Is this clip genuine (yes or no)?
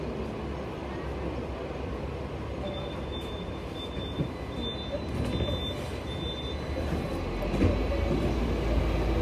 yes